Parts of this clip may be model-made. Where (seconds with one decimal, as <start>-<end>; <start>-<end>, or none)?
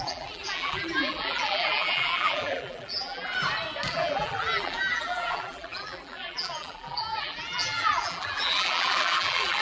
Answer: 0.0-3.3; 3.9-9.6